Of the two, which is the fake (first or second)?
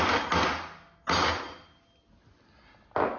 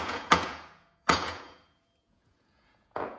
second